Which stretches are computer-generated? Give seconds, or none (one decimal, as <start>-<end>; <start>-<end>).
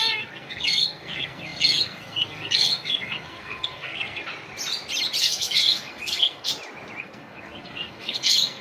0.0-4.2; 5.2-6.5; 7.0-8.6